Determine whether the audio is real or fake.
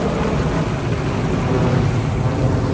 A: real